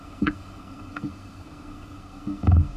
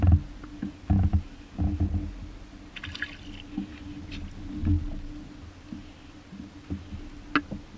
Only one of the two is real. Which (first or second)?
second